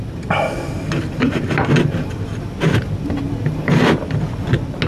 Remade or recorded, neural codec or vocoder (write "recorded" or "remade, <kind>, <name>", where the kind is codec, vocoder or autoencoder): recorded